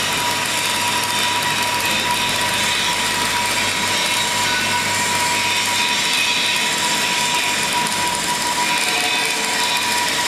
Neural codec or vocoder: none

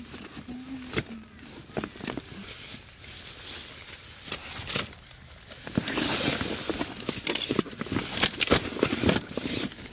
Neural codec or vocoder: none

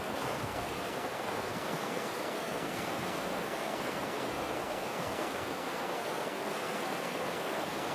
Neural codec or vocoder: codec, SNAC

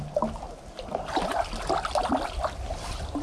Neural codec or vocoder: none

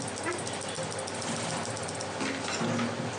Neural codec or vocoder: none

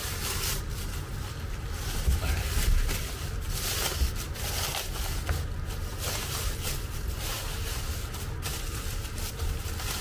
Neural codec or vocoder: none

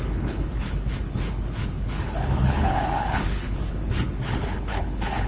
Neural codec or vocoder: codec, HILCodec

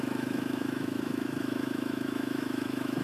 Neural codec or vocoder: autoencoder, DAC-VAE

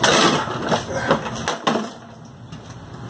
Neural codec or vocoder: none